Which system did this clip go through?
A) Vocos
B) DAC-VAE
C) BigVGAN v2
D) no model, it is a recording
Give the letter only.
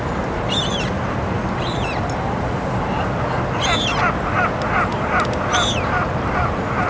D